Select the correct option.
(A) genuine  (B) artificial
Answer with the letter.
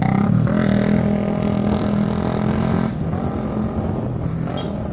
A